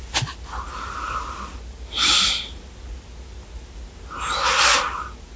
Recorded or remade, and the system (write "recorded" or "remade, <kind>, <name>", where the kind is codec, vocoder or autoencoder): recorded